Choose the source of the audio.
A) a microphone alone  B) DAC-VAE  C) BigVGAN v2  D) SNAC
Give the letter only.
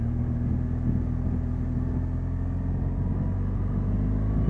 A